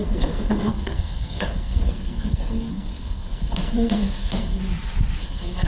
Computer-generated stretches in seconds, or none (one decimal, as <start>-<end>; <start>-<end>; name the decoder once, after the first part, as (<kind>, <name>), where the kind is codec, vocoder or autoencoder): 0.0-4.6 (codec, SNAC); 5.2-5.7